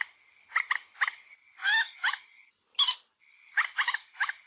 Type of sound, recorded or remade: recorded